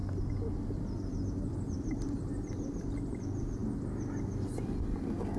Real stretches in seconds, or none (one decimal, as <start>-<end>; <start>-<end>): 3.2-5.4